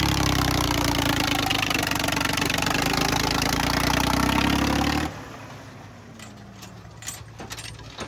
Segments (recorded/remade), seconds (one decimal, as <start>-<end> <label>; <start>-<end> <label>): 0.0-8.1 recorded